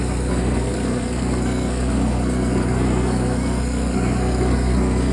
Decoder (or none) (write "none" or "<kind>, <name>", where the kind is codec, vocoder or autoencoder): codec, SNAC